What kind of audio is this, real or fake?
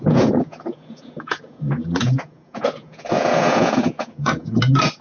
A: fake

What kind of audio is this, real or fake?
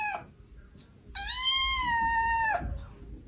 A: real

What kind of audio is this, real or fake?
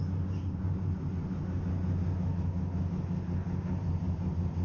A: real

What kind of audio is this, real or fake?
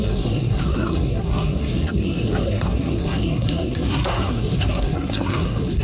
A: fake